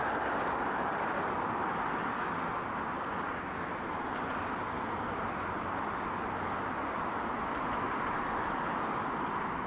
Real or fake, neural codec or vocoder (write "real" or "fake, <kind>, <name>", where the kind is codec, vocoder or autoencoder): real